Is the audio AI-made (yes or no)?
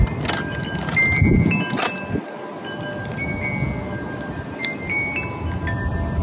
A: no